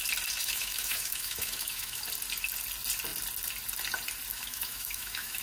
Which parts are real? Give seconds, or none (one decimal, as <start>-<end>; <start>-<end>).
0.0-0.4; 2.0-4.3